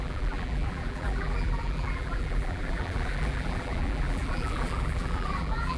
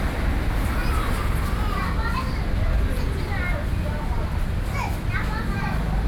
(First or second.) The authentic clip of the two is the second